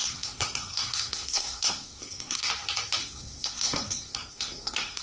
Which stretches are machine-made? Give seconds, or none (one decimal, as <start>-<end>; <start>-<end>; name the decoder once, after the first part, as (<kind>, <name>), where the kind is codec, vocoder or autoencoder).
0.0-2.5 (codec, SNAC); 3.0-5.0